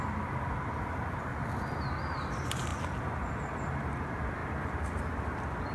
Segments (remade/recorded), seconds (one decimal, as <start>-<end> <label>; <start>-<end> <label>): 0.0-1.3 recorded; 1.3-1.9 remade; 1.9-5.7 recorded

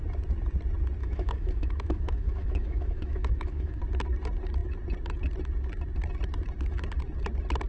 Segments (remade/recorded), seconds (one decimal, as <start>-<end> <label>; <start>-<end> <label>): 0.0-1.0 recorded; 1.0-3.8 remade; 3.8-7.7 recorded